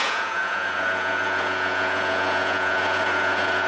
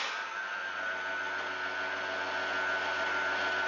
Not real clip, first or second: first